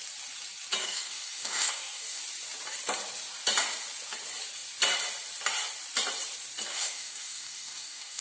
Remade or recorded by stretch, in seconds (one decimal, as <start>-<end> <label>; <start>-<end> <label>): 0.0-0.8 recorded; 0.8-2.2 remade; 2.2-6.7 recorded; 6.7-8.2 remade